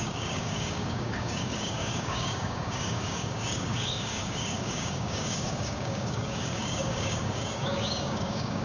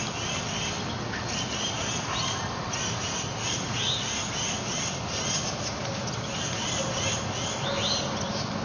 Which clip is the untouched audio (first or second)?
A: second